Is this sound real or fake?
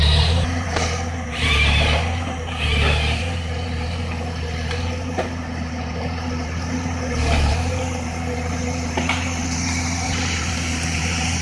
fake